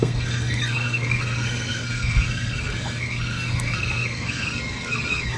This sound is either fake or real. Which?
fake